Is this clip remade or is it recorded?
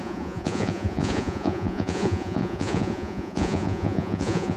remade